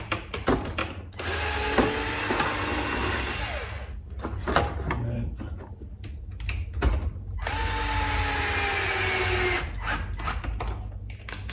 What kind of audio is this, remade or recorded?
recorded